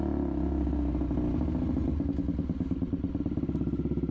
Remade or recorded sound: recorded